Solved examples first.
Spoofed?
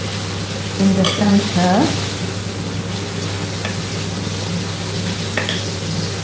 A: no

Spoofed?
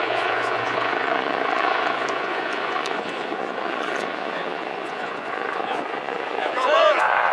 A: yes